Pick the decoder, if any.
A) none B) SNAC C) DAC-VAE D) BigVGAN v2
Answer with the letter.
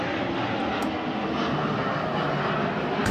A